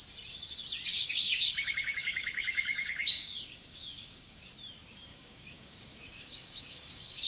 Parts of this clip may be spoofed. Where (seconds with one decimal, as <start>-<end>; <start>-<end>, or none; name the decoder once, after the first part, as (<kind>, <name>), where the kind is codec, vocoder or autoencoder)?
0.9-4.4 (codec, DAC); 5.1-7.3